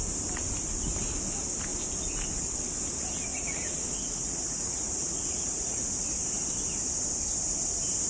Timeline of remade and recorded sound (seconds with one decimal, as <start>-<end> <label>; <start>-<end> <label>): 0.0-3.3 recorded; 3.3-5.8 remade; 5.8-8.1 recorded